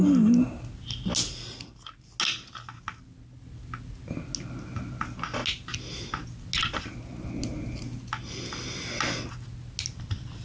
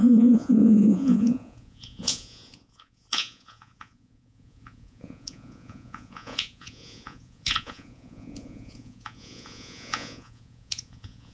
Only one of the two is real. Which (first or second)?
first